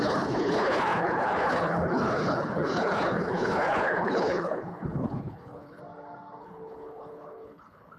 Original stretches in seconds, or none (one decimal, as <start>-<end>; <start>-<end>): 5.8-6.4